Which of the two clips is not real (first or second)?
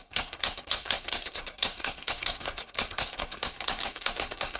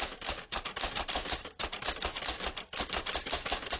first